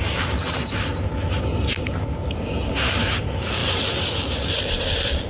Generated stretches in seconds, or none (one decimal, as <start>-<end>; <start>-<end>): none

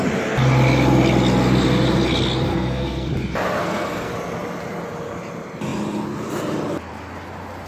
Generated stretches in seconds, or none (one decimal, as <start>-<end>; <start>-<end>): 2.5-3.1; 3.6-4.1